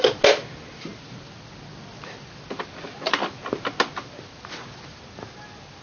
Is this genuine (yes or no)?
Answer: yes